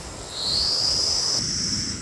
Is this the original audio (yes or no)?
yes